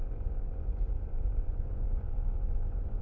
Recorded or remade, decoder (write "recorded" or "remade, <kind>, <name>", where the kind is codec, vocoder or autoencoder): remade, vocoder, Vocos